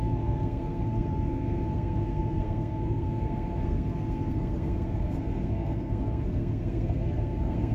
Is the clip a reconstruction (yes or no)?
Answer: yes